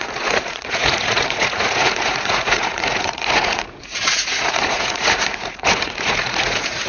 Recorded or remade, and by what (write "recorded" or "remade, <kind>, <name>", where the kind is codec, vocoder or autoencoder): remade, vocoder, Vocos